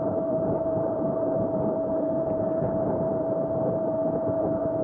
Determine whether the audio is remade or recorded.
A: remade